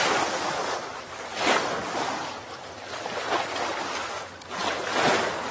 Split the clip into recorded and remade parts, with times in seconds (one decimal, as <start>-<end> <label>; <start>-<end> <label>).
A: 0.0-1.3 recorded; 1.3-3.6 remade; 3.6-5.5 recorded